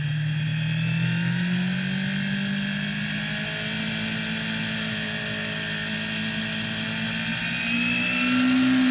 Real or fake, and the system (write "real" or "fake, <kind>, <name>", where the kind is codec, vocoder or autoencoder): real